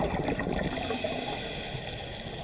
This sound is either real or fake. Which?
real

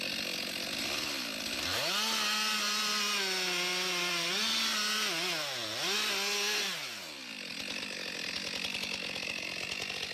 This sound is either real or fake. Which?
real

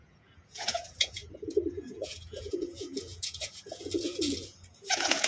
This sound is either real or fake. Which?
fake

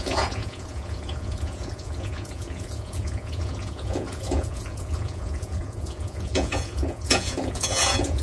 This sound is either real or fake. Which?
fake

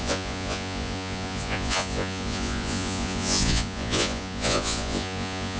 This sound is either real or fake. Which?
fake